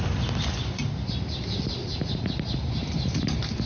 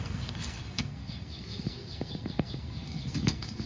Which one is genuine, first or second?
first